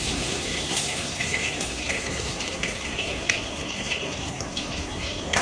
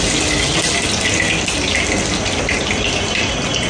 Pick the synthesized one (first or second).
first